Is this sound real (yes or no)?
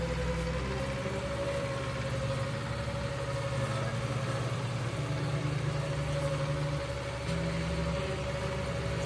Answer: yes